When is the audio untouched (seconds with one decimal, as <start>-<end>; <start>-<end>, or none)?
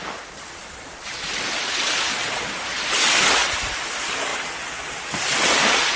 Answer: 0.0-6.0